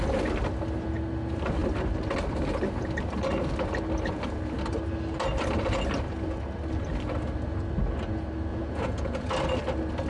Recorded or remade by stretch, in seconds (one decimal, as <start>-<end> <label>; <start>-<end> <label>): 0.0-8.5 recorded; 8.5-9.3 remade; 9.3-10.1 recorded